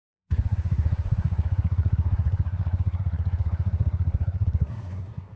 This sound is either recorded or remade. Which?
remade